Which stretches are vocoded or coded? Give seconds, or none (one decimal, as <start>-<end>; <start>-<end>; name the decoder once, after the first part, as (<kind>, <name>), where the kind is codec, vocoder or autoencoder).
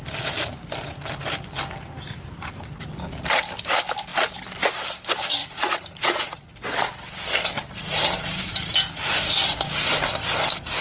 5.4-6.4 (vocoder, Vocos)